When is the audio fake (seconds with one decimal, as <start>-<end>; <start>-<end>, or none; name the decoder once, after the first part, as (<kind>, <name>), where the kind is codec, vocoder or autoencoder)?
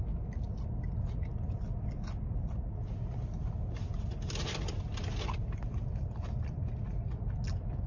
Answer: none